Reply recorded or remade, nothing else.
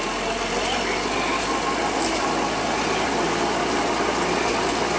recorded